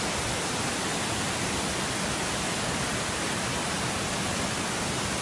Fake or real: real